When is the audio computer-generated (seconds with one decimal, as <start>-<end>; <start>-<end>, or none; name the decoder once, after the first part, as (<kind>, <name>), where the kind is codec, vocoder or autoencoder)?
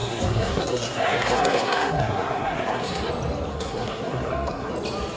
0.0-3.1 (codec, SNAC); 3.5-4.7